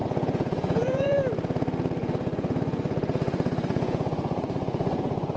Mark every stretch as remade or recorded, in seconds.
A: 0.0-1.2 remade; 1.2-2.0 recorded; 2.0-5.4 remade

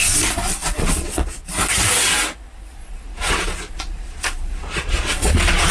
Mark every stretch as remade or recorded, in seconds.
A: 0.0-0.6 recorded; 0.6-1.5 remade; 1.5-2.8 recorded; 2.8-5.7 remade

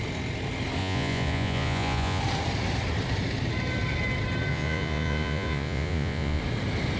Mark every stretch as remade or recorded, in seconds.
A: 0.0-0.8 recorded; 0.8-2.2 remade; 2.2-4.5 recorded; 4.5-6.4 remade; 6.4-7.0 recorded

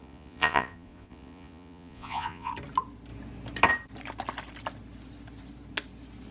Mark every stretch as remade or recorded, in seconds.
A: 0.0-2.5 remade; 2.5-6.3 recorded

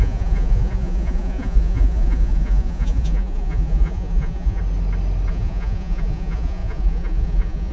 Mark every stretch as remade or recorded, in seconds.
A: 0.0-4.6 remade; 4.6-5.3 recorded; 5.3-7.7 remade

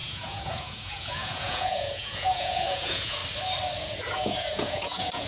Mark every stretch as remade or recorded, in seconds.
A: 0.0-3.2 remade; 3.2-4.0 recorded; 4.0-5.3 remade